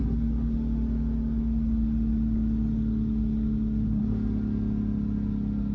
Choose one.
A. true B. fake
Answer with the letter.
A